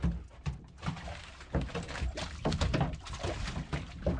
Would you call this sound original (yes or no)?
yes